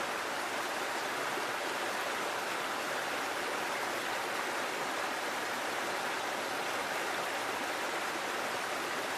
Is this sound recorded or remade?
remade